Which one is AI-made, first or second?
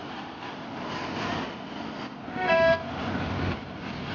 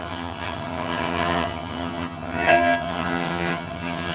second